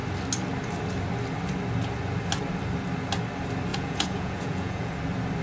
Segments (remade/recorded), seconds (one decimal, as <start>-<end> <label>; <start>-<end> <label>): 0.0-3.7 recorded; 3.7-4.9 remade; 4.9-5.4 recorded